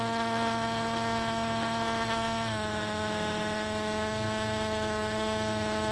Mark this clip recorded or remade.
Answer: remade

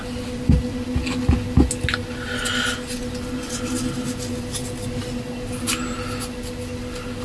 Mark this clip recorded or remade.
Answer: recorded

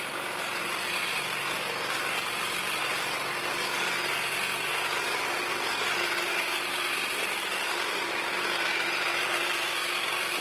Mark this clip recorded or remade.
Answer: recorded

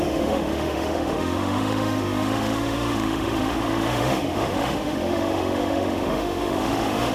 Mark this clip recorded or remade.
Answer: remade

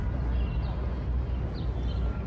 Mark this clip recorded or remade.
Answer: recorded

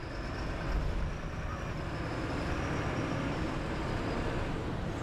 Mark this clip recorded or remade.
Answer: recorded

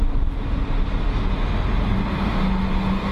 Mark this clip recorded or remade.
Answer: recorded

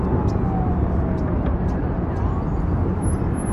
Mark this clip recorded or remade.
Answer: recorded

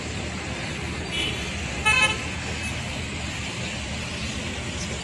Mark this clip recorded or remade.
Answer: recorded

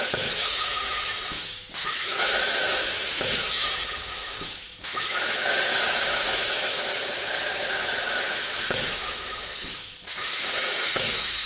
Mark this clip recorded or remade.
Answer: remade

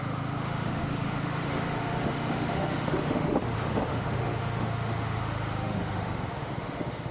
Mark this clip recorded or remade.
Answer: remade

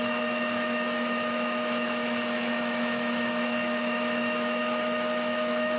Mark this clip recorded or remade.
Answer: remade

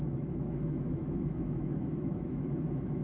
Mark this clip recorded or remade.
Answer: remade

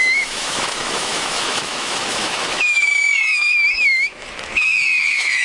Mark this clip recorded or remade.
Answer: remade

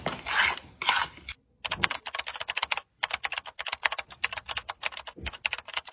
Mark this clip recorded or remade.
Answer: recorded